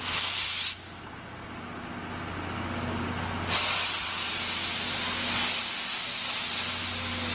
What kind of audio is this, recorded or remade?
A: recorded